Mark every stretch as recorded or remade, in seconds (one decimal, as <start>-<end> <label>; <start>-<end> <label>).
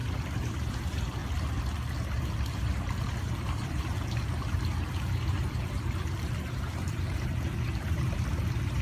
0.0-1.2 remade; 1.2-2.2 recorded; 2.2-8.8 remade